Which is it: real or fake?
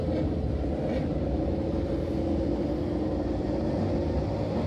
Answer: real